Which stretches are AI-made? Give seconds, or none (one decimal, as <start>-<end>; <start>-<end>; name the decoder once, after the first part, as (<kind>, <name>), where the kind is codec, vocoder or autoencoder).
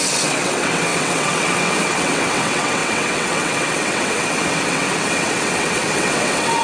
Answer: 0.0-6.6 (vocoder, WaveNeXt)